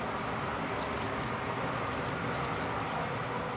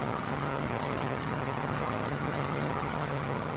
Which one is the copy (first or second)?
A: second